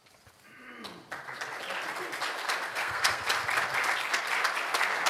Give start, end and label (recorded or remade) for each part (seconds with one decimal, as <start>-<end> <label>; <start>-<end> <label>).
0.0-2.7 recorded; 2.7-3.2 remade; 3.2-5.1 recorded

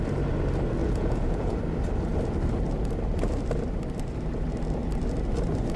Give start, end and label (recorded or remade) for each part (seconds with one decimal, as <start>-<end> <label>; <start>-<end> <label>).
0.0-0.8 recorded; 0.8-1.6 remade; 1.6-5.8 recorded

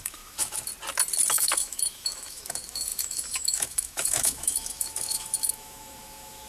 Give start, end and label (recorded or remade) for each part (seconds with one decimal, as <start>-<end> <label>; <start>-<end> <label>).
0.0-0.7 remade; 0.7-1.3 recorded; 1.3-6.5 remade

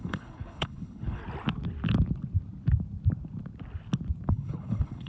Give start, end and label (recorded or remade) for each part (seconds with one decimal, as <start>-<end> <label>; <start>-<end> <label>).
0.0-1.2 remade; 1.2-4.3 recorded; 4.3-5.1 remade

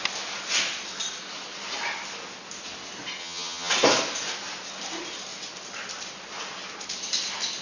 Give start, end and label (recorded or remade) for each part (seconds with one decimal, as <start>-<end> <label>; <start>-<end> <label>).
0.0-3.2 recorded; 3.2-3.7 remade; 3.7-7.6 recorded

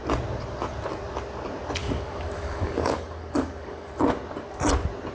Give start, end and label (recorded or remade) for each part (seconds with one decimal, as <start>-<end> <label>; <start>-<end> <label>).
0.0-1.8 recorded; 1.8-3.9 remade; 3.9-5.1 recorded

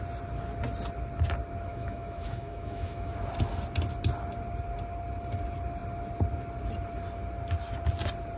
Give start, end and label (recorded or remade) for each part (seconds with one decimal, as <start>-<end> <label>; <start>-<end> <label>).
0.0-1.7 recorded; 1.7-3.1 remade; 3.1-8.4 recorded